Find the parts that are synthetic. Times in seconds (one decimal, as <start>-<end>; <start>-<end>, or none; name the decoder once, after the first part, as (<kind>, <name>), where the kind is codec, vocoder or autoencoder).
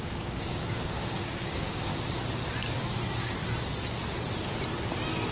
0.0-1.9 (codec, DAC)